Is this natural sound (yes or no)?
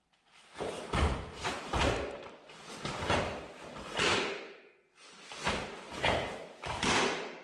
yes